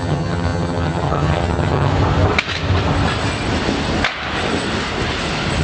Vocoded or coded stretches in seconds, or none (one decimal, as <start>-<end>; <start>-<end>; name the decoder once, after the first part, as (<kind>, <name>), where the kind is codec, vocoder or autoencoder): 0.0-1.9 (vocoder, HiFi-GAN)